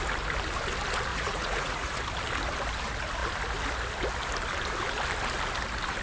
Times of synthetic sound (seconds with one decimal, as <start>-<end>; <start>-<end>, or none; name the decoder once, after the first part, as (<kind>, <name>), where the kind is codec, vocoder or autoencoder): 1.1-2.0 (vocoder, Vocos)